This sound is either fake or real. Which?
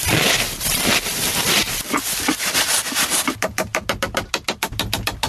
real